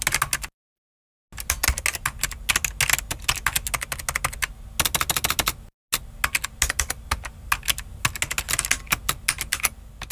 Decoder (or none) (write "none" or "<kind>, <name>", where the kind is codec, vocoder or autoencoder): none